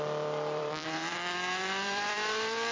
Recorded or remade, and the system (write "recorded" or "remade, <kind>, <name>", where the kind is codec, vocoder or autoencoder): remade, vocoder, BigVGAN v2